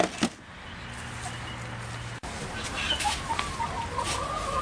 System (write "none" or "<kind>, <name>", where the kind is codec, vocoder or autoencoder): none